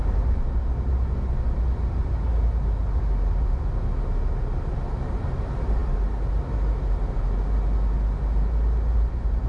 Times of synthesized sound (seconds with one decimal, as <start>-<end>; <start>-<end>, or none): none